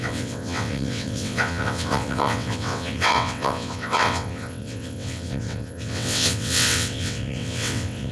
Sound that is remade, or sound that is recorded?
remade